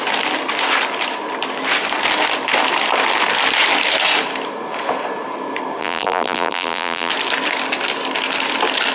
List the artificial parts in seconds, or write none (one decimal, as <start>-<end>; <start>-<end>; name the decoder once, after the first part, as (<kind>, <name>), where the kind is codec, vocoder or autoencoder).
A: 5.8-7.1 (vocoder, BigVGAN v2)